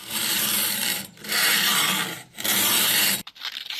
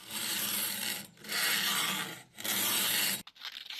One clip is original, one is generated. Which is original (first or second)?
second